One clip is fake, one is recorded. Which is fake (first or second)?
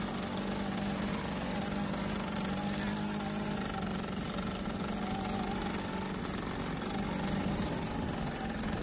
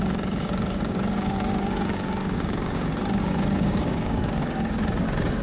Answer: second